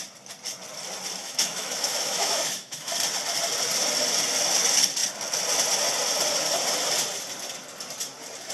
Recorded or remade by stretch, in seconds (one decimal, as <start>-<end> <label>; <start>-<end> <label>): 0.0-1.2 recorded; 1.2-2.9 remade; 2.9-8.5 recorded